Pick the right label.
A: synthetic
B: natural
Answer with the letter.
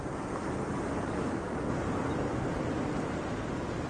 B